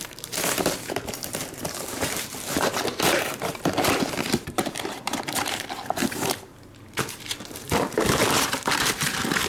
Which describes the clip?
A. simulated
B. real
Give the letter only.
A